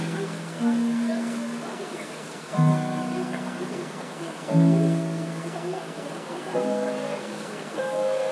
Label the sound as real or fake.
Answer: fake